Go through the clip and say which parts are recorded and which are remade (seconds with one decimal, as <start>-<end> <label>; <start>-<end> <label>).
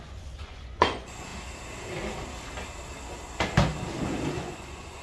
0.0-1.3 remade; 1.3-4.3 recorded; 4.3-5.0 remade